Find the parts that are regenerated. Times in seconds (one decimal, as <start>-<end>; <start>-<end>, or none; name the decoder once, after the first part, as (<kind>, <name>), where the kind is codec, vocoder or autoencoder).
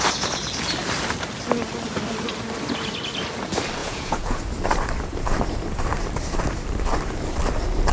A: 3.8-4.4 (vocoder, Vocos)